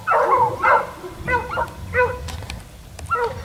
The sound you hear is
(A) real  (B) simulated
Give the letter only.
A